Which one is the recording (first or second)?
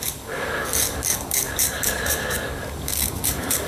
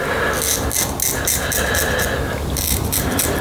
second